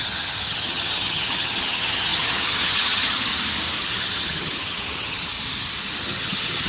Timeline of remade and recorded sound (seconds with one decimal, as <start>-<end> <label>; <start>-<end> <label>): 0.0-3.3 remade; 3.3-3.8 recorded; 3.8-5.3 remade; 5.3-6.0 recorded; 6.0-6.7 remade